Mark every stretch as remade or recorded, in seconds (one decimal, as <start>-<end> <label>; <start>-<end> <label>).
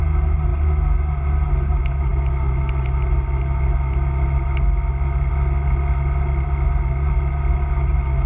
0.0-8.3 recorded